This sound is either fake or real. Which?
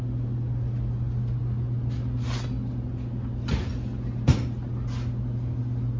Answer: real